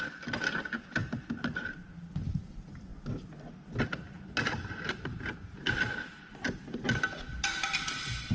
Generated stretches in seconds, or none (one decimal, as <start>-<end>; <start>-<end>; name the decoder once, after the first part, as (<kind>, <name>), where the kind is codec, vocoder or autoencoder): 6.3-7.0 (vocoder, BigVGAN v2)